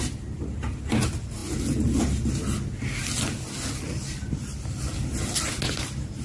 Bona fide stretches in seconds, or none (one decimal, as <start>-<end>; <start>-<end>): 0.0-6.2